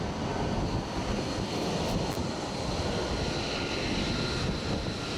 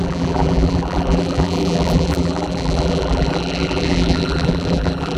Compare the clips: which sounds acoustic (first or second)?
first